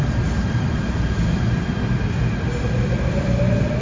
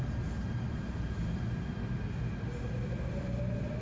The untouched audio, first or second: second